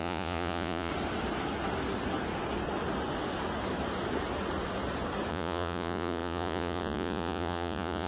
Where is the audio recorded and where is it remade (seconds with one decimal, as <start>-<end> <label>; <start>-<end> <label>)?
0.0-0.9 remade; 0.9-5.3 recorded; 5.3-8.1 remade